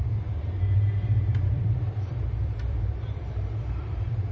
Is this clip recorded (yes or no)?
no